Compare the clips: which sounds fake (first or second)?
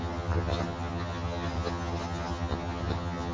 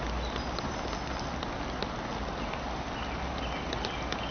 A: first